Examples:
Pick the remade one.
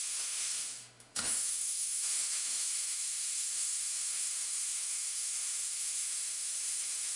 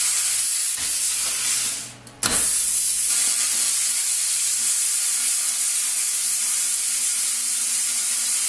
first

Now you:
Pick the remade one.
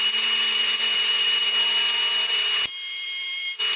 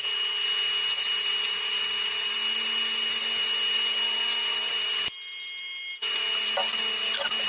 first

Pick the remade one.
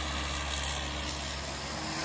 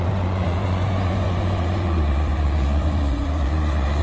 second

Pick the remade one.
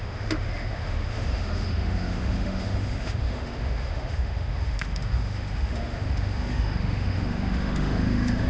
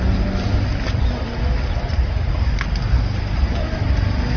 first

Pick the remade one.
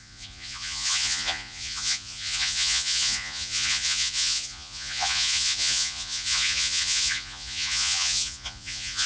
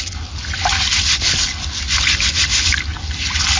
first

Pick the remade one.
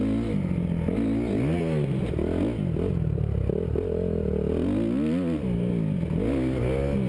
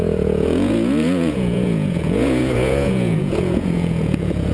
second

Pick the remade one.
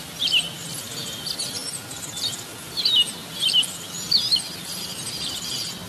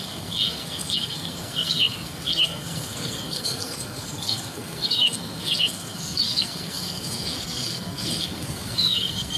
second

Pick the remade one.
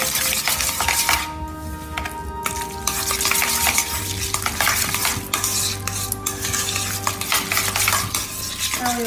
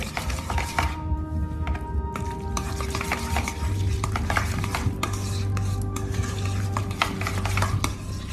second